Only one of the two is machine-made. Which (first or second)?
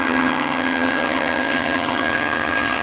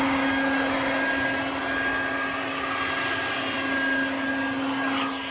first